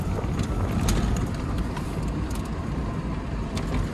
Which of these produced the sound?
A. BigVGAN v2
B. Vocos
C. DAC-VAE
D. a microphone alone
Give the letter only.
A